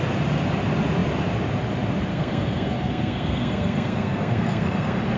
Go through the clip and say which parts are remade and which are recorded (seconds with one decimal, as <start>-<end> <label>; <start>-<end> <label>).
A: 0.0-2.1 recorded; 2.1-5.2 remade